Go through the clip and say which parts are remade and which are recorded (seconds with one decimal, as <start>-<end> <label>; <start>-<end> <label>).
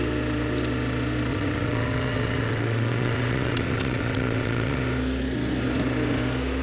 0.0-1.3 recorded; 1.3-4.8 remade; 4.8-6.6 recorded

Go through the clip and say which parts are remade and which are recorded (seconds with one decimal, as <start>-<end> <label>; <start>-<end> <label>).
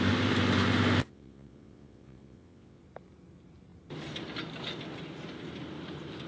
0.0-1.0 recorded; 1.0-2.8 remade; 2.8-6.3 recorded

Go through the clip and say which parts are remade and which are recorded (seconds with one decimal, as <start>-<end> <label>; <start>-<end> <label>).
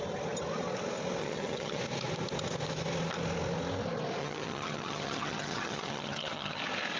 0.0-1.2 recorded; 1.2-1.8 remade; 1.8-4.2 recorded; 4.2-6.6 remade; 6.6-7.0 recorded